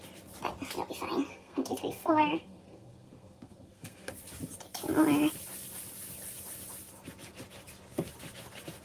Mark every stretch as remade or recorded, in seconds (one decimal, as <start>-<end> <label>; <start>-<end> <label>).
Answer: 0.0-1.3 recorded; 1.3-4.1 remade; 4.1-8.8 recorded